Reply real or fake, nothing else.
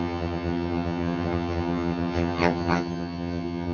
fake